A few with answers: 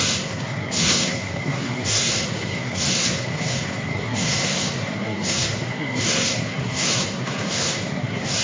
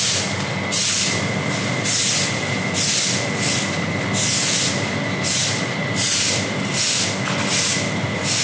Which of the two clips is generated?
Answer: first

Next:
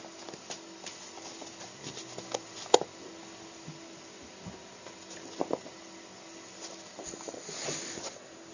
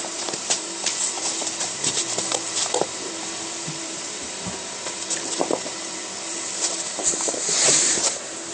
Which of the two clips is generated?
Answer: second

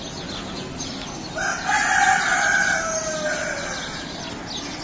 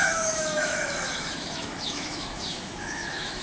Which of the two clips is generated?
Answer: second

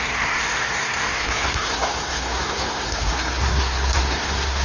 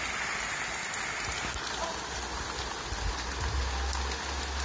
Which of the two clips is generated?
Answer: first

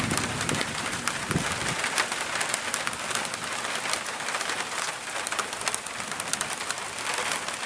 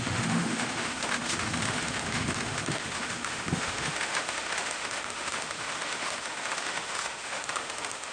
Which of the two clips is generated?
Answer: second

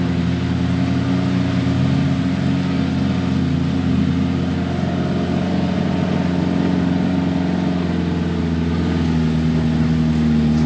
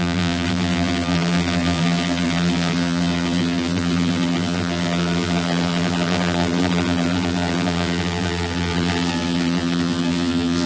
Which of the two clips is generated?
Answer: second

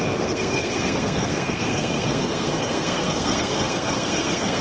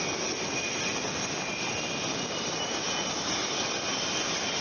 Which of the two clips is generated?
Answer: first